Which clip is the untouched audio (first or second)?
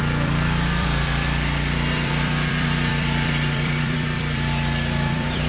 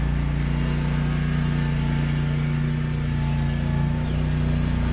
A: second